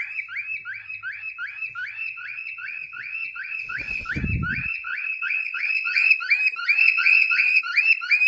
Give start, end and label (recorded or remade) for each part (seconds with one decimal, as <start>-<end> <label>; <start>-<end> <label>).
0.0-2.0 recorded; 2.0-4.1 remade; 4.1-4.5 recorded; 4.5-6.1 remade; 6.1-6.8 recorded; 6.8-7.6 remade; 7.6-8.3 recorded